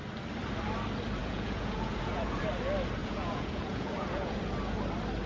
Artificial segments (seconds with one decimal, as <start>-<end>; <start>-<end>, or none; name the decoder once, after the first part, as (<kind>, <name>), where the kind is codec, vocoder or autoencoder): 1.2-2.4 (vocoder, Vocos); 3.0-4.4